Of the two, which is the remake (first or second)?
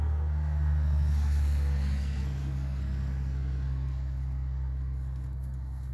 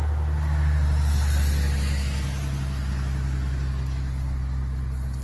first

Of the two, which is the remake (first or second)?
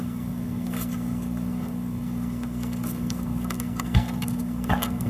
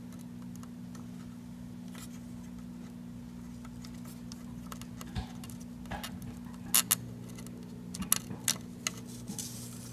first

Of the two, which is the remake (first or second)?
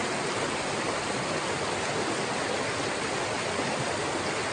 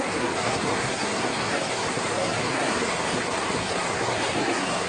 second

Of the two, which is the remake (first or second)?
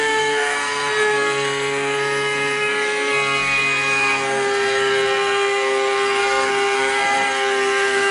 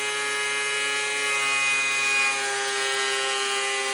first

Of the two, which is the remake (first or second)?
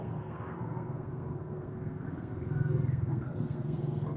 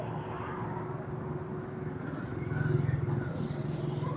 first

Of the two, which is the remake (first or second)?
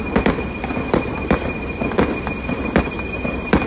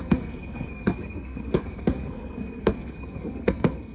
second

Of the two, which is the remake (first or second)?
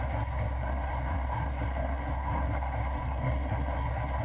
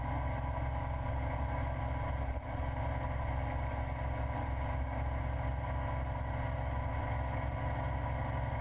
first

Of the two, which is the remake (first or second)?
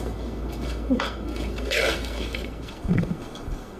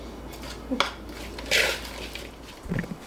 first